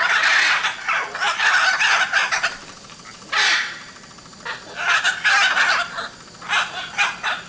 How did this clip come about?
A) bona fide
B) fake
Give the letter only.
A